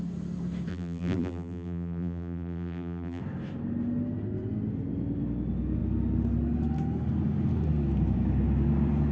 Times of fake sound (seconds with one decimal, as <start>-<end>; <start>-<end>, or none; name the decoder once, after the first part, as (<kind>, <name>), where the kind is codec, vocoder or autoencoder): 0.7-3.2 (vocoder, BigVGAN v2)